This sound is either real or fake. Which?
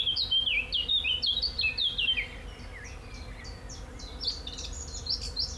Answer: real